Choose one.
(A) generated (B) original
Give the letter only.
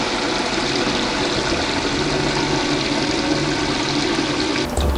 B